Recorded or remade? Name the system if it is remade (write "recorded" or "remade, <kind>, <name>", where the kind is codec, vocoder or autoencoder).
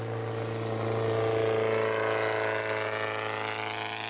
recorded